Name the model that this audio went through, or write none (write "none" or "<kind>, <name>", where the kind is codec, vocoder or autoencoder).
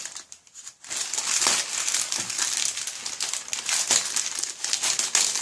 none